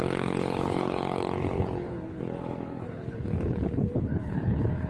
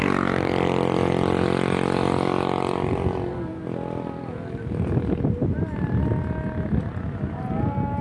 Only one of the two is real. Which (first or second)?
second